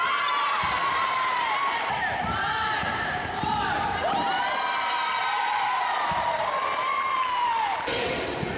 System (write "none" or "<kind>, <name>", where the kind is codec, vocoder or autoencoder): vocoder, BigVGAN v2